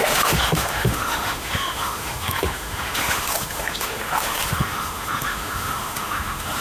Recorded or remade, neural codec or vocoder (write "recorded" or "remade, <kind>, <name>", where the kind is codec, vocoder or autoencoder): remade, autoencoder, DAC-VAE